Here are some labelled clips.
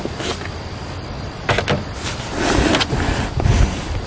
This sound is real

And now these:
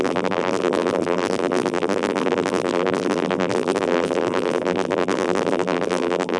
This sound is fake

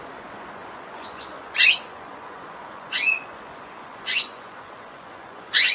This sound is fake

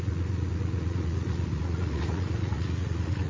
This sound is fake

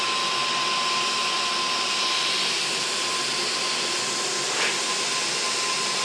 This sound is real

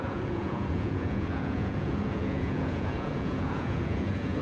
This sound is fake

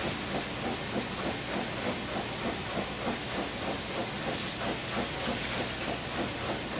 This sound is real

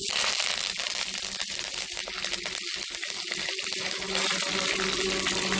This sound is real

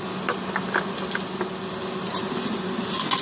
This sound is real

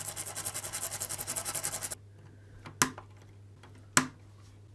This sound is real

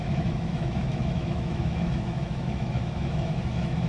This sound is fake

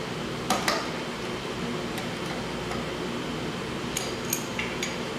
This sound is real